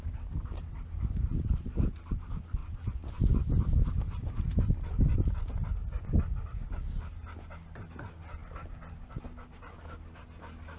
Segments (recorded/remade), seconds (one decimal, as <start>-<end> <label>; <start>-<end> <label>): 0.0-2.6 recorded; 2.6-3.2 remade; 3.2-3.9 recorded; 3.9-4.4 remade; 4.4-10.8 recorded